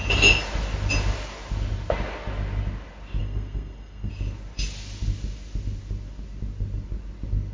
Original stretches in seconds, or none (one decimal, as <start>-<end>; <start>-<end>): 0.0-3.2; 4.1-7.5